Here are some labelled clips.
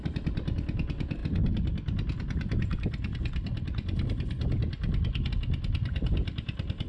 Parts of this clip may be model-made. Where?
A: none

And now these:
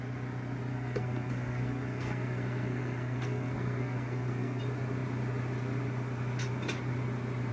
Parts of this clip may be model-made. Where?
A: 0.7-4.6 (codec, SNAC)

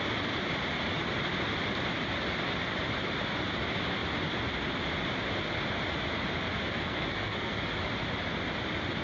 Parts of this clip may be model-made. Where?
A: 6.8-7.6 (codec, SNAC)

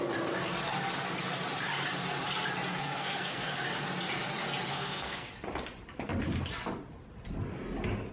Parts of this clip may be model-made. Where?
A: 2.7-3.6 (codec, SNAC); 4.7-5.3